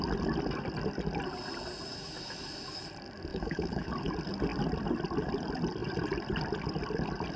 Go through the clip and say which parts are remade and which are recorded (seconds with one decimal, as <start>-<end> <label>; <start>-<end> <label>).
0.0-1.9 recorded; 1.9-2.8 remade; 2.8-3.3 recorded; 3.3-3.9 remade; 3.9-7.4 recorded